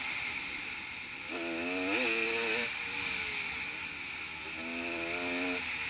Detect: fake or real real